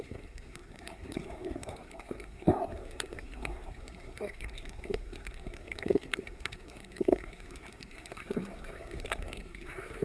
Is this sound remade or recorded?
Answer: remade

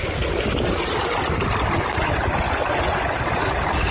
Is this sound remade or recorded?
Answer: recorded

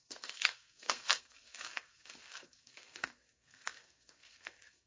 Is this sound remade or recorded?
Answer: remade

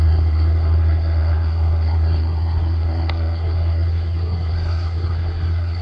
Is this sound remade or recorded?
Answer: remade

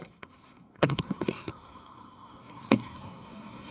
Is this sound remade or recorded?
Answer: remade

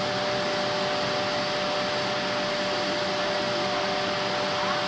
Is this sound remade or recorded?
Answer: recorded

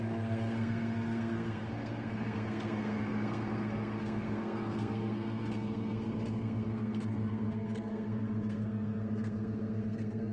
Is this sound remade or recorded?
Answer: remade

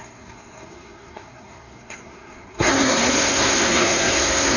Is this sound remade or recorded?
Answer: remade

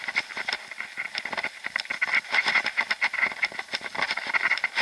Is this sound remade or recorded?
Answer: recorded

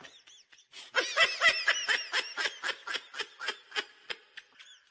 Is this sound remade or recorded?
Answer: recorded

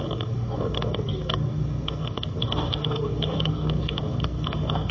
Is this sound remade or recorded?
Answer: remade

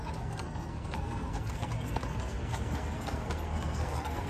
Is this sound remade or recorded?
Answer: remade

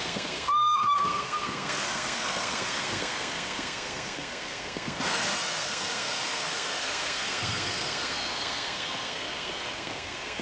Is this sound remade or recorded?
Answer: remade